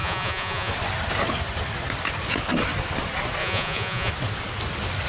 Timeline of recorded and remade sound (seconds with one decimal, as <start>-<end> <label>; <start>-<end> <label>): 0.0-0.7 remade; 0.7-3.4 recorded; 3.4-4.1 remade; 4.1-5.1 recorded